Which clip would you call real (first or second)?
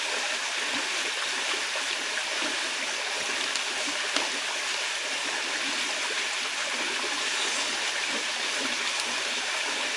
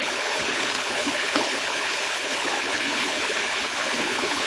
first